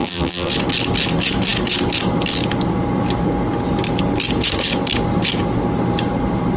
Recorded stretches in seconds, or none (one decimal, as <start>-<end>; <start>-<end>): 0.5-6.6